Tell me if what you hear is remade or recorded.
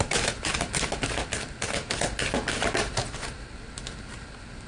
recorded